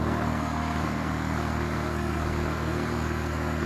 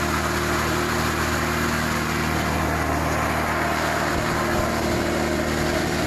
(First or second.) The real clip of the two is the second